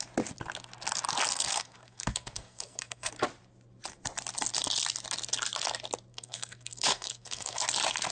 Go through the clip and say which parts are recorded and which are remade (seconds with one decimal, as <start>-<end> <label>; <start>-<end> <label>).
0.0-1.3 recorded; 1.3-3.1 remade; 3.1-6.1 recorded; 6.1-7.6 remade; 7.6-8.1 recorded